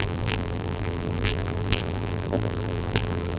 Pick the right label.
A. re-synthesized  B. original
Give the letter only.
A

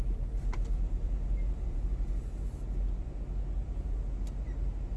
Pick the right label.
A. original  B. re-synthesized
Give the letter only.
A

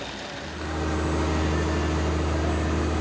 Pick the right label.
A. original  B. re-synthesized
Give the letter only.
A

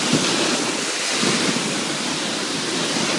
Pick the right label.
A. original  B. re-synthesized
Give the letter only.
A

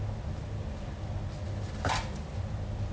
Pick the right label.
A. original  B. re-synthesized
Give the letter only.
A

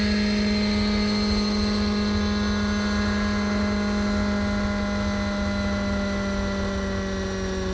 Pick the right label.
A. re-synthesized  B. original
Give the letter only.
B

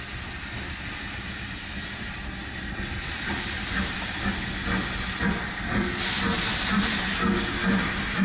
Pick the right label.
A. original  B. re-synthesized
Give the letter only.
A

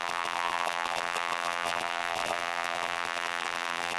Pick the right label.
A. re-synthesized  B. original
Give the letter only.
A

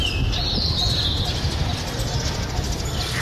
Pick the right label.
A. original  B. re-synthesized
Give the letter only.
A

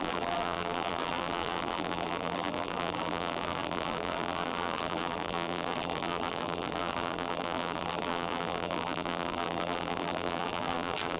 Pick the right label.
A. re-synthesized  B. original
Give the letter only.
A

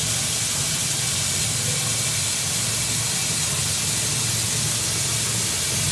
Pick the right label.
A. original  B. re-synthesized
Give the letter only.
A